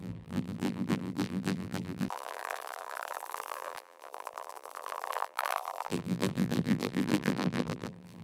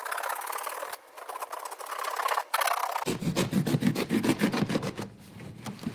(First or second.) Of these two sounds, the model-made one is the first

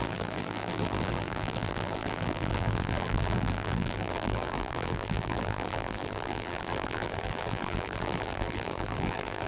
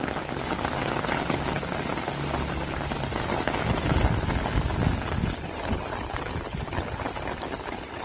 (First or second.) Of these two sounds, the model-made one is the first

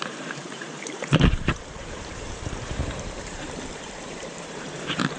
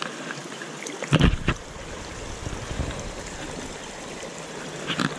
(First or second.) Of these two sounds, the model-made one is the first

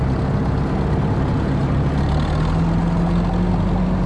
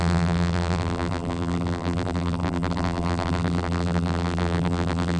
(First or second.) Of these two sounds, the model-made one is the second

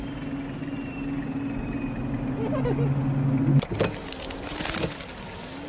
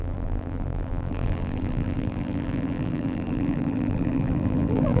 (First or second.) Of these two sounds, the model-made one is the second